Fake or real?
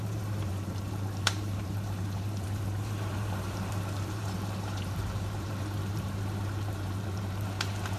fake